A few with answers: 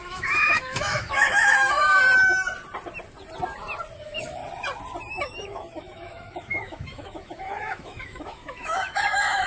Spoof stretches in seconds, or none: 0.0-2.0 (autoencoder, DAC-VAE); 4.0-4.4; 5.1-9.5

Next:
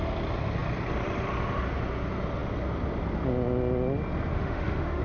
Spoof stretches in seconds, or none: 4.3-5.0 (autoencoder, DAC-VAE)

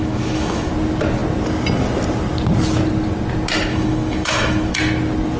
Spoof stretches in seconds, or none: 0.0-0.7 (autoencoder, DAC-VAE); 3.7-4.7

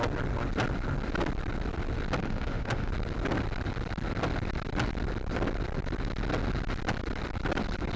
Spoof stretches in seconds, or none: 2.2-2.9 (autoencoder, DAC-VAE)